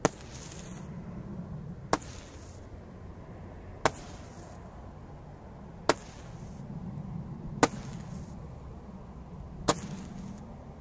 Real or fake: real